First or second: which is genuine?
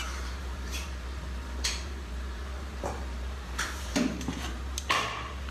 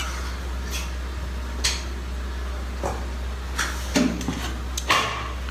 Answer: second